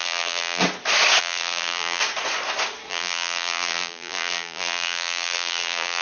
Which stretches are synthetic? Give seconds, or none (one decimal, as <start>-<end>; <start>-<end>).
0.0-0.6; 1.2-2.0; 2.9-6.0